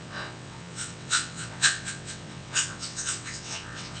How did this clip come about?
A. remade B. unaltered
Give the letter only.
A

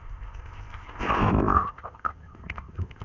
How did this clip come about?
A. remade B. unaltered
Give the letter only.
A